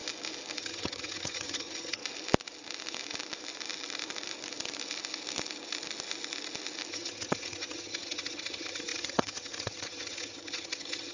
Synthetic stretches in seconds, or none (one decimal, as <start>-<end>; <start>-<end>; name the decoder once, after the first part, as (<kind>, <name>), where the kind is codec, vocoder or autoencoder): 0.6-2.0 (vocoder, HiFi-GAN); 6.9-11.1